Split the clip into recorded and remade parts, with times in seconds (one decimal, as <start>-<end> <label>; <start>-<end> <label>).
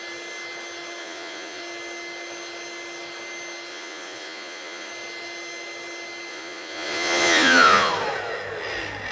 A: 0.0-1.0 recorded; 1.0-1.6 remade; 1.6-3.7 recorded; 3.7-4.9 remade; 4.9-6.3 recorded; 6.3-7.9 remade; 7.9-9.1 recorded